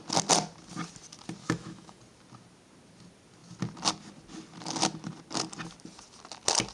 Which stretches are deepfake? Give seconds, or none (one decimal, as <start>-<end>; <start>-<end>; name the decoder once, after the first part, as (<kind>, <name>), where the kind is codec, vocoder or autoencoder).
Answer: 1.4-2.0 (autoencoder, DAC-VAE)